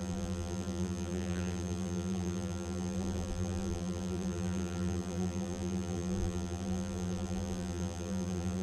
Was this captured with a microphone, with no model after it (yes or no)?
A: no